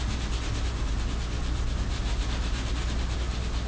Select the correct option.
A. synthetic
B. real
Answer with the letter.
B